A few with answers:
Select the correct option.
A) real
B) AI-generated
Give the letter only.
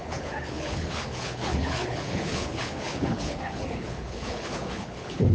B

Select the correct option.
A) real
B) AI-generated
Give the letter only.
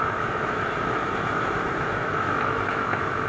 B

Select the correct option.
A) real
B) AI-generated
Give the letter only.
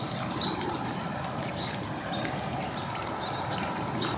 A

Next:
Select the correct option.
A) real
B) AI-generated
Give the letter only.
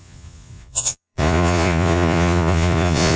B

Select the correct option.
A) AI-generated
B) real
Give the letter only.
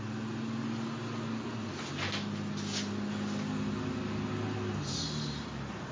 B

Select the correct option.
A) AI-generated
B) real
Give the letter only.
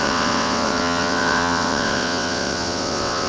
A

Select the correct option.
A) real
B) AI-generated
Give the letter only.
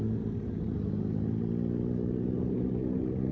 A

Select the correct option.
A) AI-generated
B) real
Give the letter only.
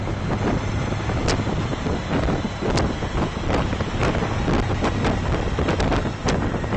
B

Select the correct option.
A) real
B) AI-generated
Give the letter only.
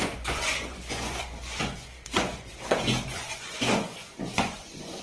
B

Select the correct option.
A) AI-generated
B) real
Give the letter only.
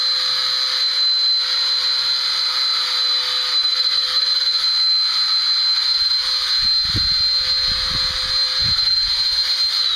B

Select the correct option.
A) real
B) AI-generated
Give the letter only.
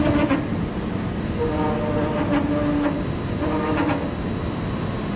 A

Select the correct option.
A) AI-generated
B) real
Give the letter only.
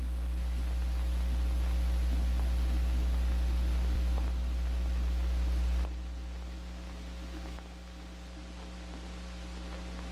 B